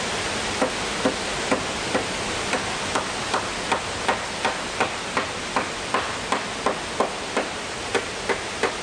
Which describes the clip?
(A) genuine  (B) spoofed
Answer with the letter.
A